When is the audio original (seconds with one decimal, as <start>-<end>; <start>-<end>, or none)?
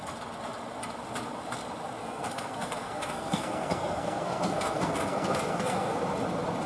0.0-2.0; 6.0-6.7